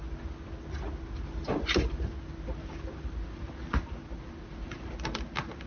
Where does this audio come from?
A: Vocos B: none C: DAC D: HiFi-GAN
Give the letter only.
B